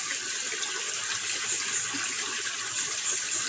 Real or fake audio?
real